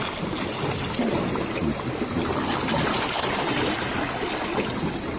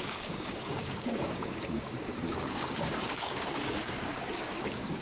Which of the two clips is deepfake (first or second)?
second